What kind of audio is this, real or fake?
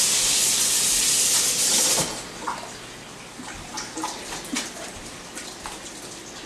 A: real